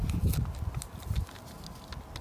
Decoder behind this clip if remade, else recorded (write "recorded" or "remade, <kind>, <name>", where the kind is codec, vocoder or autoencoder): recorded